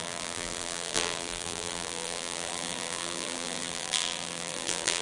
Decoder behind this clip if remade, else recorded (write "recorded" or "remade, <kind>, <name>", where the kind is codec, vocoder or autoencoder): remade, vocoder, BigVGAN v2